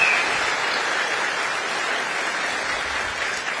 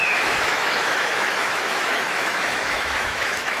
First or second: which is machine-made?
second